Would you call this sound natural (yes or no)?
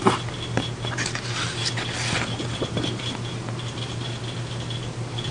yes